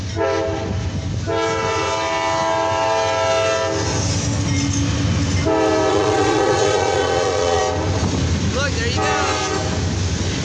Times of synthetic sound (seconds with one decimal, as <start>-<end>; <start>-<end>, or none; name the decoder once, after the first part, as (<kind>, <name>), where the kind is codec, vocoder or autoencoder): 5.9-7.6 (vocoder, Vocos)